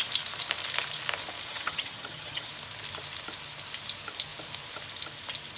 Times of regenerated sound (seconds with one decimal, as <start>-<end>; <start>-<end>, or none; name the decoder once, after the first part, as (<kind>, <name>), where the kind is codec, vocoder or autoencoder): 1.5-2.5 (vocoder, HiFi-GAN)